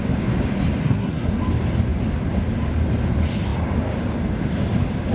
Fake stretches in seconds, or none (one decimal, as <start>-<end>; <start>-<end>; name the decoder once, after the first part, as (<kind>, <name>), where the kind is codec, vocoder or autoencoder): 0.8-1.4 (codec, SNAC)